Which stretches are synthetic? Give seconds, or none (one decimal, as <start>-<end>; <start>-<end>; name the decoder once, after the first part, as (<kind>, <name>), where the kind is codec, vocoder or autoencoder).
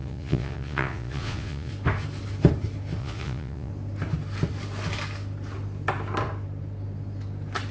0.0-1.7 (vocoder, Vocos); 3.0-3.7